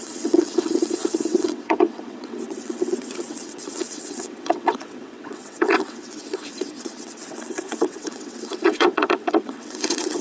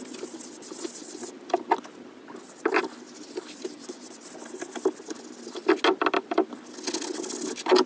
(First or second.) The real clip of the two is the second